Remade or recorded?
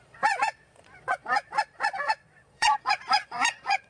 remade